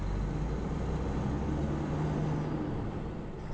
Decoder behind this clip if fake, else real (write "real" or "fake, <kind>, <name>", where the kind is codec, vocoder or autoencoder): real